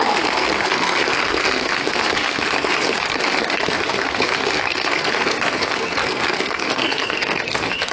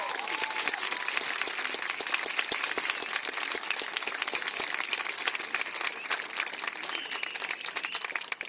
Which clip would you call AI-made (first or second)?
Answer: first